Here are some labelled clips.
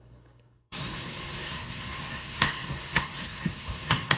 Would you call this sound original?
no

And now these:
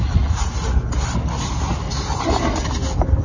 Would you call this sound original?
yes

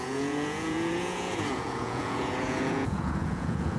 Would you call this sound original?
no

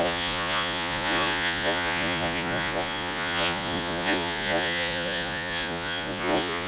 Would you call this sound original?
no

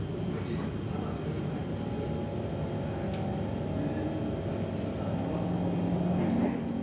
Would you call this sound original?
yes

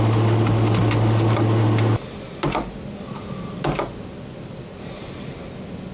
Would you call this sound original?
yes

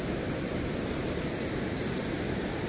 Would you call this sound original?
yes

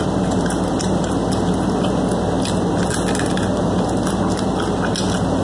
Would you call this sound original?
yes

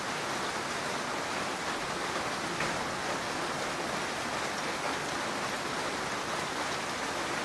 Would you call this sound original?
yes